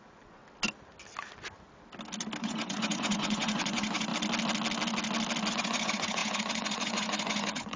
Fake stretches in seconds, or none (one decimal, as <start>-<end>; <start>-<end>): 0.0-0.4; 2.4-4.1; 5.5-7.8